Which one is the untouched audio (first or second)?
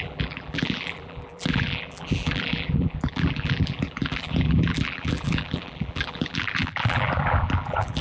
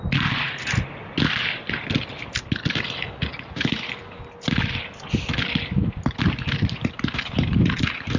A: second